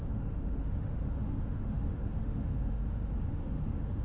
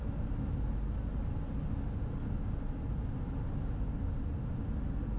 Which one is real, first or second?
second